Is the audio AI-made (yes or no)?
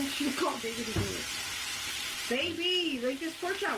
no